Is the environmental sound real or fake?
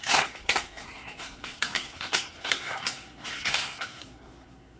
fake